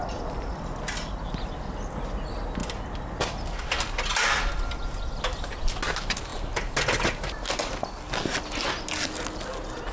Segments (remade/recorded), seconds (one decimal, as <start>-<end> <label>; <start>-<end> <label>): 0.0-9.9 recorded